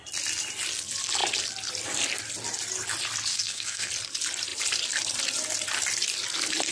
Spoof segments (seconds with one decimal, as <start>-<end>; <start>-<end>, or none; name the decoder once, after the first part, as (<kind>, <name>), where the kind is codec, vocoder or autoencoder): 3.3-3.9 (codec, SNAC)